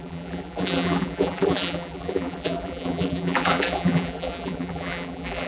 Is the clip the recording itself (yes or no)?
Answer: no